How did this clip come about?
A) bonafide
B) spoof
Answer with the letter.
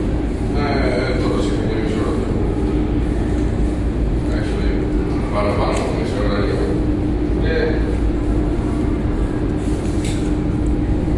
A